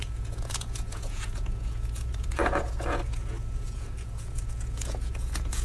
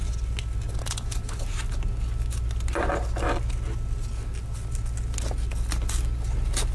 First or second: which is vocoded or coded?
first